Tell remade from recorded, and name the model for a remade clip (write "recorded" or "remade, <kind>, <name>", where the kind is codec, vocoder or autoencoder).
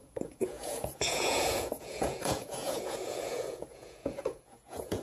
remade, vocoder, Vocos